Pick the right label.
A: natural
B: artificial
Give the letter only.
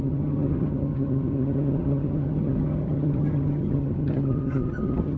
B